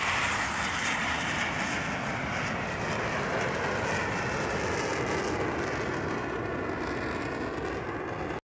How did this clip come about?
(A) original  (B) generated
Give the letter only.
A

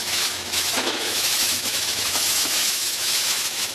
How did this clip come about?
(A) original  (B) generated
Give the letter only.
B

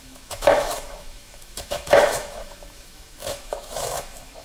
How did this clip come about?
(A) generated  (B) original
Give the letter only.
A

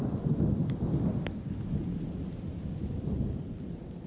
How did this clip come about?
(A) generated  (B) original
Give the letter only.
B